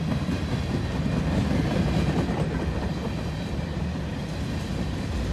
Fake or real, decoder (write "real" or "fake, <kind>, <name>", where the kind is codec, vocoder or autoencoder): real